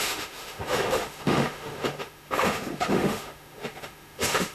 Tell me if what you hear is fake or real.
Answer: fake